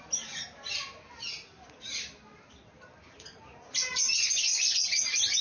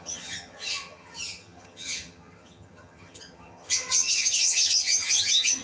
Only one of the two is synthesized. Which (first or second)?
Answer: second